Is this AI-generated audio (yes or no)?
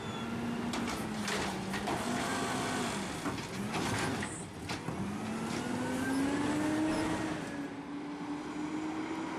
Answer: no